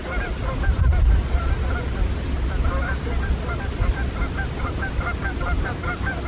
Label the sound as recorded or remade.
recorded